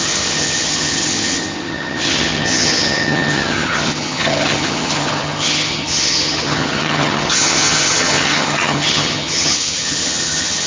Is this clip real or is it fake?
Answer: fake